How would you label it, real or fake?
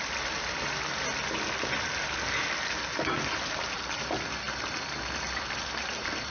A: real